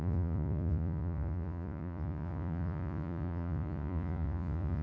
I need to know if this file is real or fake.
fake